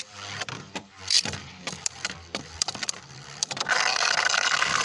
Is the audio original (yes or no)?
no